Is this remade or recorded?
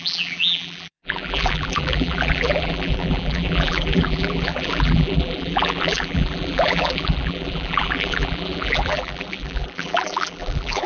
remade